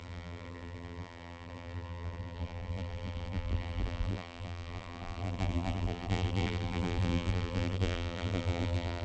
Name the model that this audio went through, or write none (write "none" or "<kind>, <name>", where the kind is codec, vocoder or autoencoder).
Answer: vocoder, BigVGAN v2